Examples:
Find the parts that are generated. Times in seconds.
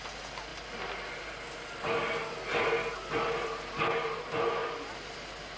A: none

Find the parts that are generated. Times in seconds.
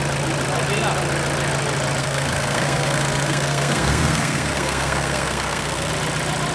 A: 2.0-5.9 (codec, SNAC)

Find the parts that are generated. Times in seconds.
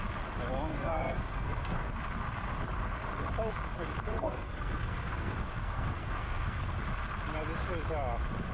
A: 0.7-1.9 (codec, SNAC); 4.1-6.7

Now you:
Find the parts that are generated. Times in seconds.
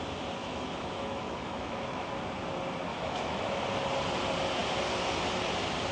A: 0.4-2.1 (autoencoder, DAC-VAE); 2.9-3.6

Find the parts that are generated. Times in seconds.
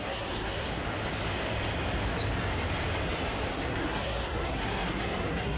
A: 0.0-0.8 (codec, SNAC); 3.5-5.6